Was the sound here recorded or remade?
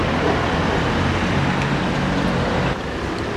recorded